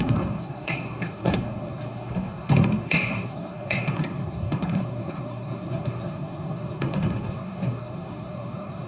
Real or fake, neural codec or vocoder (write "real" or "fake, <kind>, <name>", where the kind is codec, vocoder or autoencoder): fake, codec, SNAC